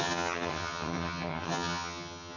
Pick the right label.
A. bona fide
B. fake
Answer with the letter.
B